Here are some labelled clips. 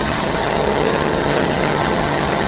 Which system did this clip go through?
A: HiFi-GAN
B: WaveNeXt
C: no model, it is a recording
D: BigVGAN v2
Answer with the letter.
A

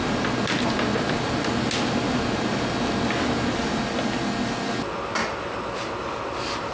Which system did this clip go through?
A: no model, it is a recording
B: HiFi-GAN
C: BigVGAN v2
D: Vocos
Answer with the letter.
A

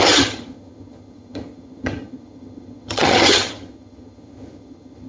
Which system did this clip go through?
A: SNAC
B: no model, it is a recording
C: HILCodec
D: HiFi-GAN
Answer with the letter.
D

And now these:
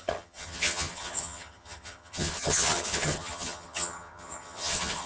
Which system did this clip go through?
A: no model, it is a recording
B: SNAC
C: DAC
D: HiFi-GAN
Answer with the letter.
D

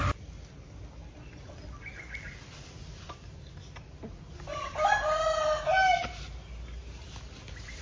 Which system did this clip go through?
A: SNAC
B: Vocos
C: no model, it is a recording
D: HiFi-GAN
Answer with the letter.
C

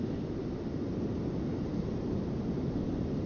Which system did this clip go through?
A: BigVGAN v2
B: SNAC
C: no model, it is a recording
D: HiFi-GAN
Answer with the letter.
C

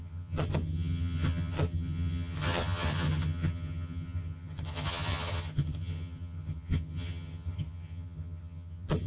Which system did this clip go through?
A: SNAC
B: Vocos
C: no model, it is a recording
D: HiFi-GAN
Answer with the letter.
D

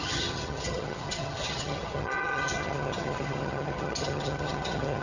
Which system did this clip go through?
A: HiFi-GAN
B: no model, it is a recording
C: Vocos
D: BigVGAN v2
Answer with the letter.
A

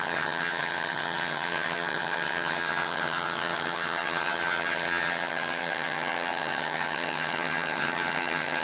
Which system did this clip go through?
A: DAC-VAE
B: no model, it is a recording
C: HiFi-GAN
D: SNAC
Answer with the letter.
C